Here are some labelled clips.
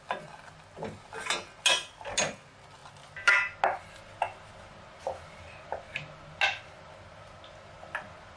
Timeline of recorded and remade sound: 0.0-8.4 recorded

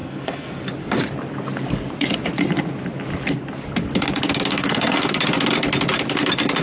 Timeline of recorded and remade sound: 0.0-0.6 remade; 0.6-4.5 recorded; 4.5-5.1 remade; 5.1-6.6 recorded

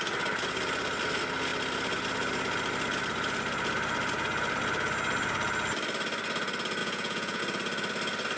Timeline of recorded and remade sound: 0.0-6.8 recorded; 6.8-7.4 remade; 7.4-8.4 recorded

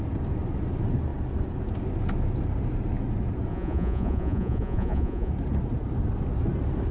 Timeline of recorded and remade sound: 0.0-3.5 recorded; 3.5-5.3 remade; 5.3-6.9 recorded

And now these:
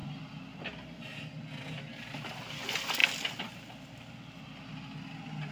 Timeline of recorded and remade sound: 0.0-5.5 recorded